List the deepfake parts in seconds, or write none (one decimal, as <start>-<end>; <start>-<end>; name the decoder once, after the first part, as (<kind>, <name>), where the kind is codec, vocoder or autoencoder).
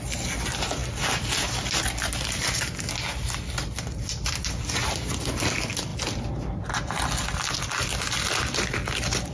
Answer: none